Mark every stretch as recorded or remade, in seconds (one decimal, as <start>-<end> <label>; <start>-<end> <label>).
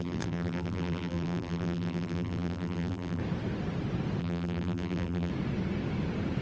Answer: 0.0-3.2 remade; 3.2-4.2 recorded; 4.2-5.3 remade; 5.3-6.4 recorded